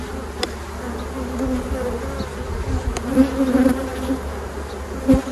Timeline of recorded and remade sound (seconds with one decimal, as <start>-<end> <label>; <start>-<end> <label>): 0.0-5.3 recorded